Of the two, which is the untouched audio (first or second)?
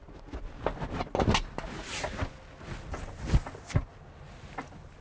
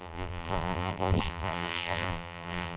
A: first